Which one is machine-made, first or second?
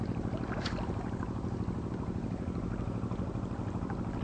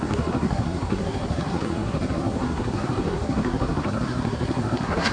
second